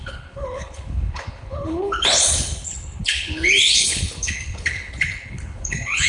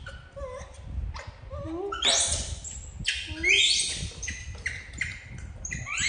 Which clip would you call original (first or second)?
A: second